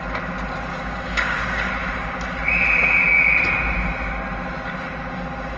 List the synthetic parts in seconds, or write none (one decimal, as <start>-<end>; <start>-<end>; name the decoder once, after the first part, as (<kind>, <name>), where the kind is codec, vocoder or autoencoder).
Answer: 0.7-1.7 (codec, DAC)